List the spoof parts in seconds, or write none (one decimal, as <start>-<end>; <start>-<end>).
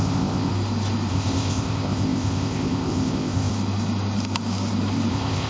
0.0-0.5; 1.1-3.5; 5.1-5.5